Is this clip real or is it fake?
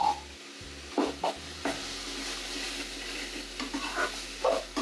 real